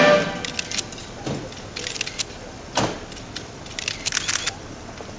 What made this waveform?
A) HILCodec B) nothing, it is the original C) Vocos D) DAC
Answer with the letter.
B